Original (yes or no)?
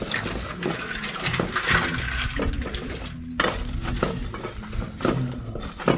yes